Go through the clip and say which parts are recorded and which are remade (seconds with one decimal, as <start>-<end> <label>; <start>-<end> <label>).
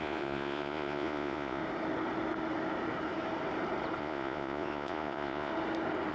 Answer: 0.0-1.6 remade; 1.6-4.0 recorded; 4.0-5.5 remade; 5.5-6.1 recorded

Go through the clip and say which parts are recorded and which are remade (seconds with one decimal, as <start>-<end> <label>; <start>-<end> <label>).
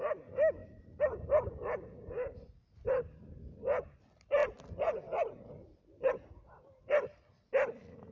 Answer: 0.0-8.1 recorded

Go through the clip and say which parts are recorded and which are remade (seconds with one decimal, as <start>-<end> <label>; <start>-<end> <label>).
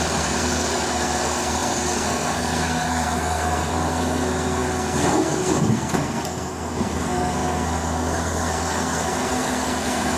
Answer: 0.0-10.2 remade